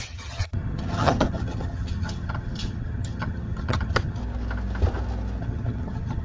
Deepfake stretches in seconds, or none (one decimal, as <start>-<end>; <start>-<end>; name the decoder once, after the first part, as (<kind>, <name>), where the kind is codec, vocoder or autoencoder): 0.0-4.2 (vocoder, HiFi-GAN); 5.4-6.2